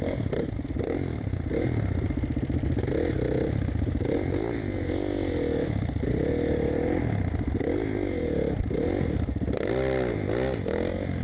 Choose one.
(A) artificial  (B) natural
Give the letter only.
B